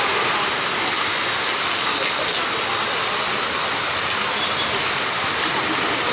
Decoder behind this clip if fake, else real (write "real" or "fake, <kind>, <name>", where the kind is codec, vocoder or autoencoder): real